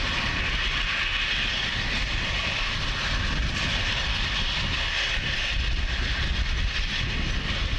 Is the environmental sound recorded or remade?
recorded